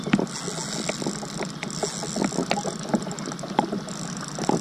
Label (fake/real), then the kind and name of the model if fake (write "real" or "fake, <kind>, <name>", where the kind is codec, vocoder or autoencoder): real